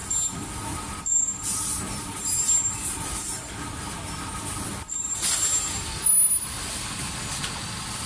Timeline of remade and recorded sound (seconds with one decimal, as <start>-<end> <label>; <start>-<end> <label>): 0.0-8.1 recorded